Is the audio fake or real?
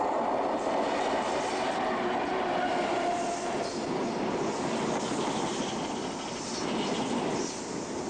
real